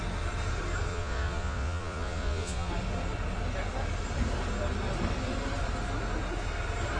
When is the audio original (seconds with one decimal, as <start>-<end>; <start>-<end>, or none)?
0.0-0.9; 2.7-7.0